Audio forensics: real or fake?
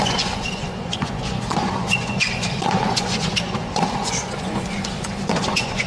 fake